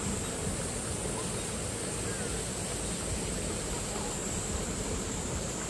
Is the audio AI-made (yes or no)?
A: no